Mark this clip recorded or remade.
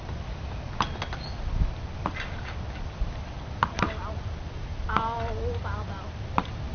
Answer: recorded